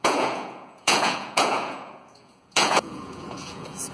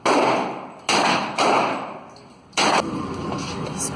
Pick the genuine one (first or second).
second